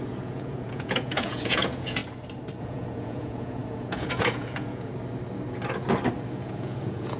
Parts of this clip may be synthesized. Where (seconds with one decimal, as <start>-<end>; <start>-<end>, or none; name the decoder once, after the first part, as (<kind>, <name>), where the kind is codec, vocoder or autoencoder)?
0.0-2.0 (vocoder, Vocos); 2.6-4.9; 6.3-7.2